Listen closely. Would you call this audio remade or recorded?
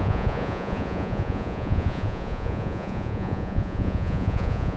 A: remade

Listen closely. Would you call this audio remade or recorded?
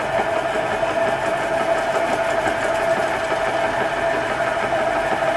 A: recorded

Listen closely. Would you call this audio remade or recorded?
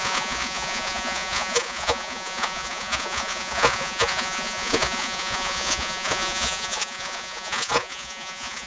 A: remade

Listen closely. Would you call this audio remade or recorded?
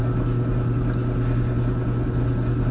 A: recorded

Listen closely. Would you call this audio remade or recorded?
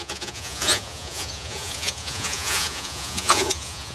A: remade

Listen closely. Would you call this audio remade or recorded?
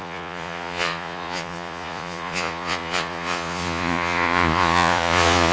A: remade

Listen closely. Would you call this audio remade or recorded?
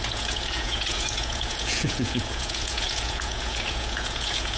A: remade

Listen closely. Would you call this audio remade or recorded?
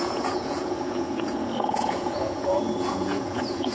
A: remade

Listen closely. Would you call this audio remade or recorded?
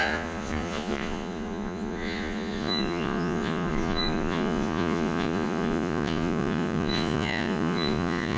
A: remade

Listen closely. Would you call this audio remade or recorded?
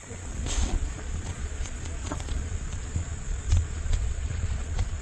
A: remade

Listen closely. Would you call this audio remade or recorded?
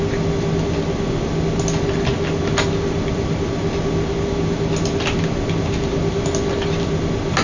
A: recorded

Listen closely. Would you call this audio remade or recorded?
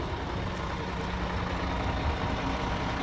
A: recorded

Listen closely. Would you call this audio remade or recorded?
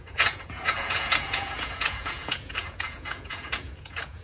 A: remade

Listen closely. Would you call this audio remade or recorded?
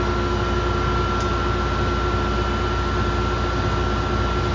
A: recorded